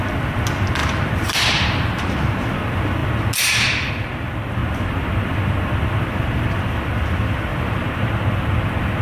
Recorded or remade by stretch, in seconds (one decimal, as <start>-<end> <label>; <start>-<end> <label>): 0.0-0.8 recorded; 0.8-2.6 remade; 2.6-4.6 recorded; 4.6-5.3 remade; 5.3-7.5 recorded; 7.5-9.0 remade